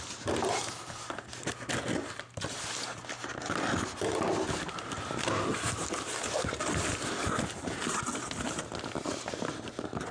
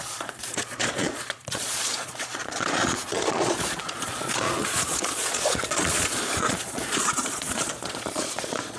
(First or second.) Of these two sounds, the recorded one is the first